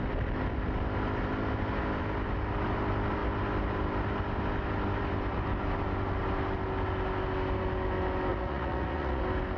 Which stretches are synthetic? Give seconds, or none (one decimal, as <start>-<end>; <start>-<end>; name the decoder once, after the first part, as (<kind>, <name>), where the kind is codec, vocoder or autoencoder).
8.3-9.2 (vocoder, Vocos)